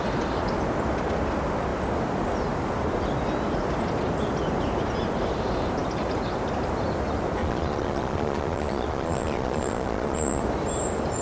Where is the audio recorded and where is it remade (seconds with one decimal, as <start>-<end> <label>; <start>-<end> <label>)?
0.0-7.4 recorded; 7.4-10.4 remade; 10.4-11.2 recorded